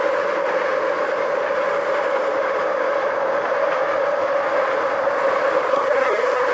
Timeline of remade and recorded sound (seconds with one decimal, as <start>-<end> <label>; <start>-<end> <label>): 0.0-5.7 recorded; 5.7-6.5 remade